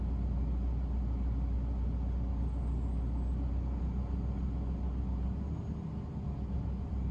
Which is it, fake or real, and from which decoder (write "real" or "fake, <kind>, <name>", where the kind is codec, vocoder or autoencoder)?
real